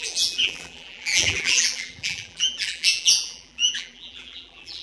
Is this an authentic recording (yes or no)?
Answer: no